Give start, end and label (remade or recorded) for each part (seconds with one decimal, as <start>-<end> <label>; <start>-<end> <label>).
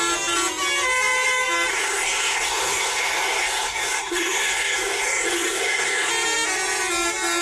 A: 0.0-1.7 recorded; 1.7-6.1 remade; 6.1-7.4 recorded